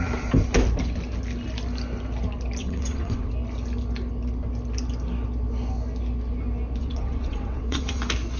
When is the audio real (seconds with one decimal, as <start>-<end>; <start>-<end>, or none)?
0.0-2.6; 3.3-6.8; 8.0-8.4

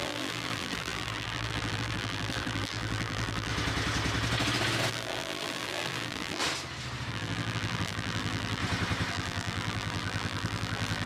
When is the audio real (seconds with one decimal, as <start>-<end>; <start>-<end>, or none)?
3.5-4.9; 6.4-7.1; 8.6-9.1

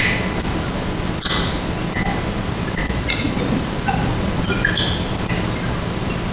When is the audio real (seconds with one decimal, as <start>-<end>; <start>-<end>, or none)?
0.0-2.8; 3.3-6.3

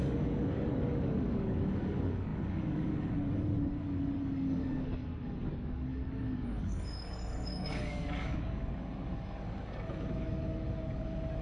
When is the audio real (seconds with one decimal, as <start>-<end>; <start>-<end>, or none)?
none

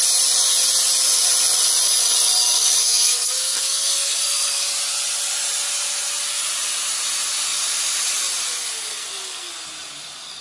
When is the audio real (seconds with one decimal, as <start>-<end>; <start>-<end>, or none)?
0.0-2.8; 4.7-8.9; 9.5-10.4

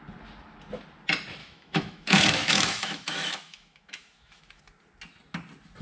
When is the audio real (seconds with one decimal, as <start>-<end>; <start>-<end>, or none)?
0.0-1.4; 4.6-5.8

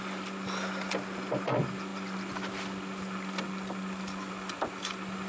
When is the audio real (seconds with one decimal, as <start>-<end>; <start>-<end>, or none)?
0.0-5.3

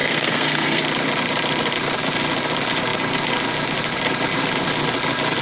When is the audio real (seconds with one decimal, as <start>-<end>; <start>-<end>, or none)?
0.8-5.4